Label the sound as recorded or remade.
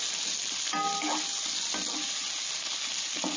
recorded